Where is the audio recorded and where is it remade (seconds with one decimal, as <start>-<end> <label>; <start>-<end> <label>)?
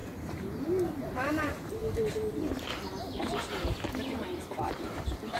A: 0.0-1.0 recorded; 1.0-1.8 remade; 1.8-4.7 recorded; 4.7-5.4 remade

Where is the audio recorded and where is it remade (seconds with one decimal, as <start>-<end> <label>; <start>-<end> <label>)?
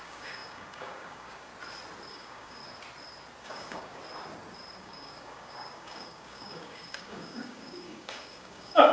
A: 0.0-1.5 remade; 1.5-2.1 recorded; 2.1-2.6 remade; 2.6-3.4 recorded; 3.4-4.0 remade; 4.0-4.8 recorded; 4.8-8.9 remade